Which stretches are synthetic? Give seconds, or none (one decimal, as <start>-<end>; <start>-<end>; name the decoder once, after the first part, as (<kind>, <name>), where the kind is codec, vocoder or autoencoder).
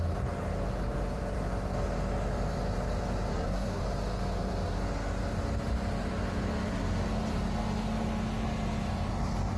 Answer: 3.3-3.8 (codec, SNAC)